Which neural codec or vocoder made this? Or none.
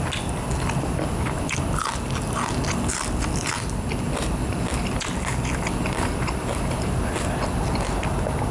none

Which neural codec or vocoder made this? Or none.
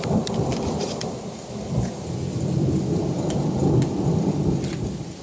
vocoder, BigVGAN v2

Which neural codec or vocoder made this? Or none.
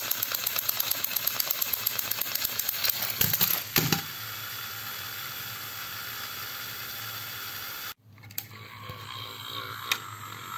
none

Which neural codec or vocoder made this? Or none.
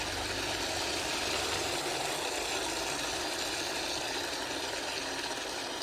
none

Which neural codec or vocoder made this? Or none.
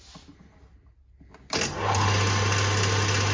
none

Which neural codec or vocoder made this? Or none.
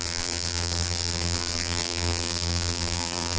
vocoder, BigVGAN v2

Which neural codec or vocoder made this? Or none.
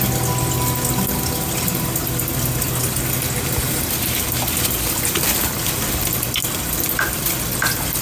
none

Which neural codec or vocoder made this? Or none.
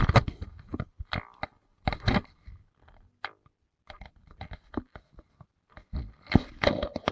none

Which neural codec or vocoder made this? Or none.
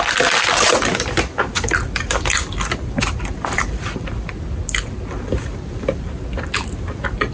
none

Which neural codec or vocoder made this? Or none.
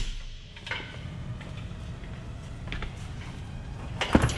none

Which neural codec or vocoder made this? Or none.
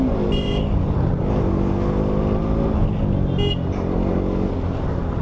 none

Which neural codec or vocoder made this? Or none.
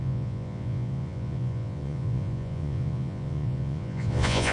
vocoder, Vocos